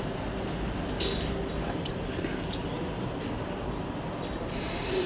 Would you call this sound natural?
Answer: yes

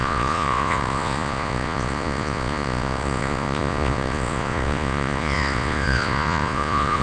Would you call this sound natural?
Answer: no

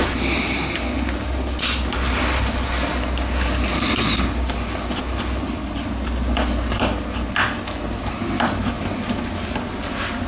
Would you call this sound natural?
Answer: yes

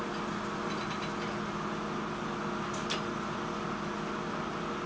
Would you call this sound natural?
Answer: yes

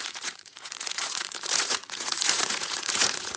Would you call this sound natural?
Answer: no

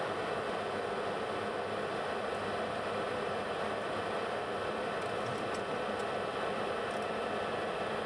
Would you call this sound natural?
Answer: yes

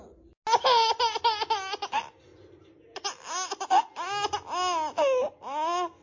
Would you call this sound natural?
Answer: yes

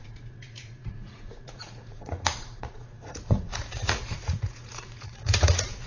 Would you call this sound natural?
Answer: no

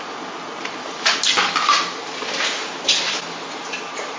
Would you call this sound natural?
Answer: yes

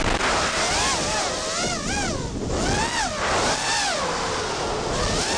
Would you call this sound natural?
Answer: yes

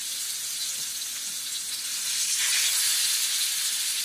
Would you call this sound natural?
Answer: yes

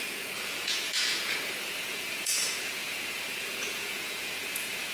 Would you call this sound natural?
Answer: no